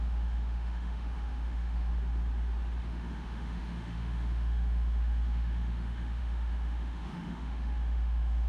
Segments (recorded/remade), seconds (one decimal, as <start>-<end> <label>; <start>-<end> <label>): 0.0-1.9 remade; 1.9-2.8 recorded; 2.8-8.5 remade